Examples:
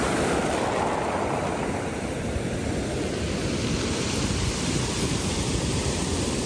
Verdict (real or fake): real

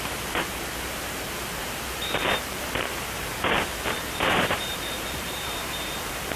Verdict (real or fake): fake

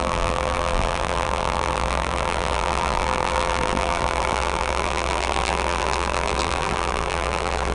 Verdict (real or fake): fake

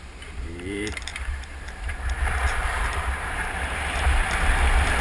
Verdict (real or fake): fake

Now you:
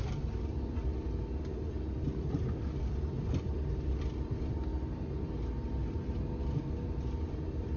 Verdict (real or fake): real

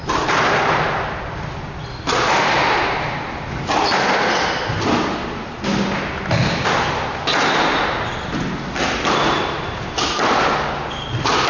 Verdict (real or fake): real